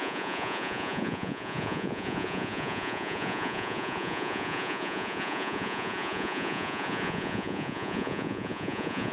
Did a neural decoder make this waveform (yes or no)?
yes